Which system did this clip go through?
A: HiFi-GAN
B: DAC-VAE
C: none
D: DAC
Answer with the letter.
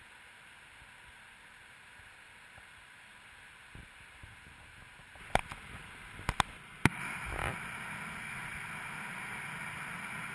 C